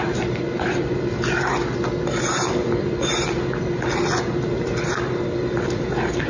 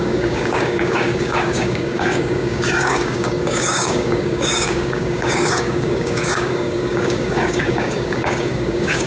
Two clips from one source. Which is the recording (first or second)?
first